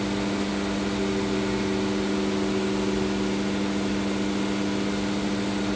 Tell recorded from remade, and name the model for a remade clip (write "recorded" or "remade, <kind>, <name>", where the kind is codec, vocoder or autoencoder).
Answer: recorded